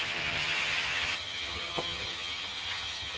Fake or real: fake